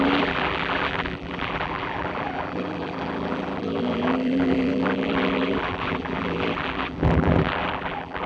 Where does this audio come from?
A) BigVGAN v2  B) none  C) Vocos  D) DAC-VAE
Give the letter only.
A